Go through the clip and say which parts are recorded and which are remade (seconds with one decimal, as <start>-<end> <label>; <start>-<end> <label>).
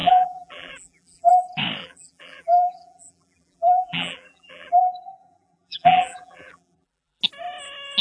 0.0-1.3 remade; 1.3-1.8 recorded; 1.8-4.8 remade; 4.8-5.2 recorded; 5.2-7.2 remade; 7.2-8.0 recorded